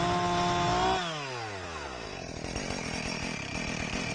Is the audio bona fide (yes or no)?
yes